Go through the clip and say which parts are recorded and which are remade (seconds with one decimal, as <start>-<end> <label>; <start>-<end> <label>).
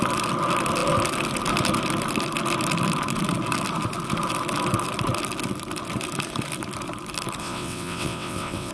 0.0-7.4 recorded; 7.4-8.7 remade